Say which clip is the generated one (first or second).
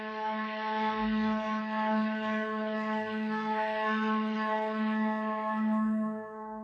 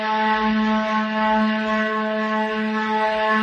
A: first